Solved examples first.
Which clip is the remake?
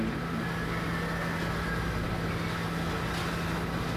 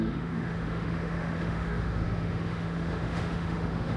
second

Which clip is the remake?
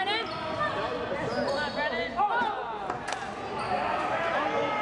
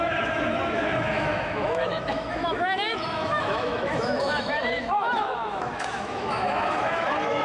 second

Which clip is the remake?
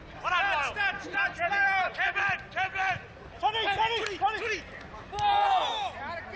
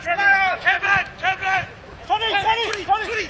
second